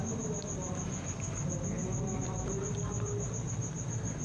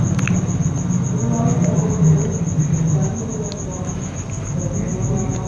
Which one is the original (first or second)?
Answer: second